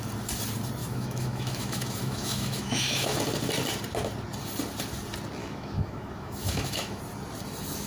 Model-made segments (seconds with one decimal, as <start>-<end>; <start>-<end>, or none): 0.8-3.2; 5.4-7.0